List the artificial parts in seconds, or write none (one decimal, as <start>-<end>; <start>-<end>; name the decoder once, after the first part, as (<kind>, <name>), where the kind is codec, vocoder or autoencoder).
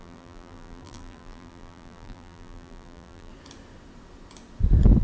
0.0-3.3 (vocoder, BigVGAN v2)